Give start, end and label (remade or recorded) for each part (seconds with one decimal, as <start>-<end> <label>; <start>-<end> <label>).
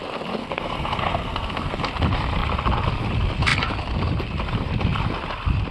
0.0-0.4 recorded; 0.4-1.9 remade; 1.9-5.7 recorded